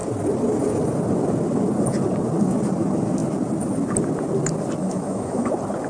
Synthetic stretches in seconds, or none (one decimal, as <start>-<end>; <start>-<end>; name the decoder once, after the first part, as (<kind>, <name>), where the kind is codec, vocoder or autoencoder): 4.8-5.5 (autoencoder, DAC-VAE)